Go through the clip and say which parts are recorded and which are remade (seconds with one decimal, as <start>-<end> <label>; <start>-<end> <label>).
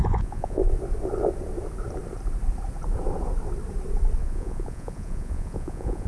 0.0-0.6 remade; 0.6-4.2 recorded; 4.2-6.1 remade